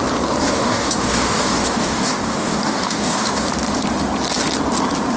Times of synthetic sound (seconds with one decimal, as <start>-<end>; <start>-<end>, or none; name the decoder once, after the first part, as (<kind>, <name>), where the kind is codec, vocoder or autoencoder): 0.4-3.5 (codec, DAC)